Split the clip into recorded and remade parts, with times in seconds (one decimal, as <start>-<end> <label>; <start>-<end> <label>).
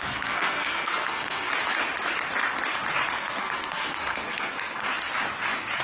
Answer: 0.0-1.5 remade; 1.5-3.2 recorded; 3.2-4.9 remade; 4.9-5.8 recorded